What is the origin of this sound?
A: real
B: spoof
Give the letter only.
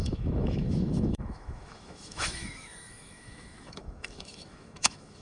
B